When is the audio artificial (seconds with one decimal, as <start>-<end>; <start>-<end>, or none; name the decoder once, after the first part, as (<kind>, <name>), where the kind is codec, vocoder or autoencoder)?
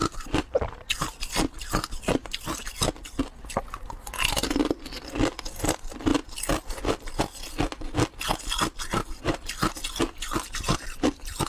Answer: none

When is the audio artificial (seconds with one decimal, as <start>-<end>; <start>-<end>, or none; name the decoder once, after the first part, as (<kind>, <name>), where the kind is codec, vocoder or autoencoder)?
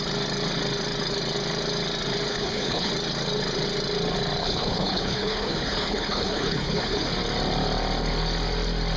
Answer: 2.3-2.9 (codec, HILCodec); 4.4-7.1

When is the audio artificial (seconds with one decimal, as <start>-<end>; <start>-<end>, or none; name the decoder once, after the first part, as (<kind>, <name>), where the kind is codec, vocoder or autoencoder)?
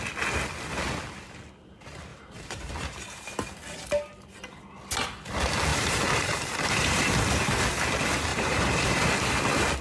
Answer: 2.1-2.7 (vocoder, BigVGAN v2); 5.7-7.2; 8.3-9.0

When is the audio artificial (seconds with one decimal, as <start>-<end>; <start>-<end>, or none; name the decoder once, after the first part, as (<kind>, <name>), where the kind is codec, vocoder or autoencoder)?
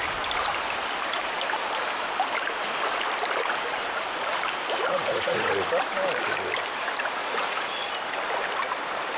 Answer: 4.9-5.5 (vocoder, Vocos); 7.2-7.9